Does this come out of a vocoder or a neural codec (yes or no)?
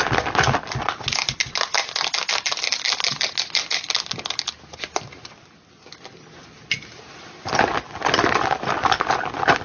no